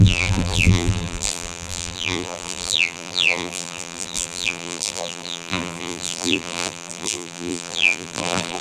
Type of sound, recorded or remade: remade